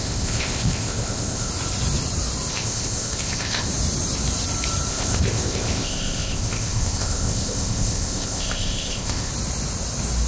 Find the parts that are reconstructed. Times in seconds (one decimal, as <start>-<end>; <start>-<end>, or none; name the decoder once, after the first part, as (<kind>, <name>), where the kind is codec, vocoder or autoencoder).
0.0-1.5 (codec, ZipCodec); 2.5-3.7; 4.9-9.3